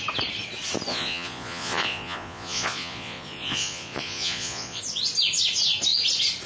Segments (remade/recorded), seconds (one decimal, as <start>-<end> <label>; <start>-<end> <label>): 0.0-0.9 recorded; 0.9-4.8 remade; 4.8-6.5 recorded